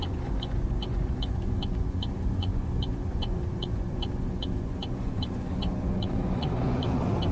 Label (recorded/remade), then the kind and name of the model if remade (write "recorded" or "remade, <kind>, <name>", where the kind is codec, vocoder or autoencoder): remade, vocoder, Vocos